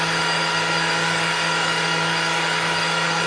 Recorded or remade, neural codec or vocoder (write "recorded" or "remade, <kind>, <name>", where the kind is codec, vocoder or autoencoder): remade, codec, DAC